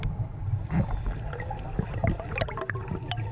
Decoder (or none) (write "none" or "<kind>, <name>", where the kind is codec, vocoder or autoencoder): none